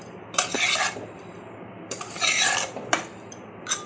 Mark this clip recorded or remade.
remade